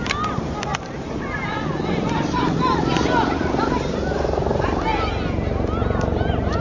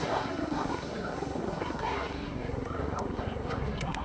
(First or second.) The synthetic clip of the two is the second